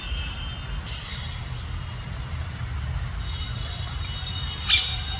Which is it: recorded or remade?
recorded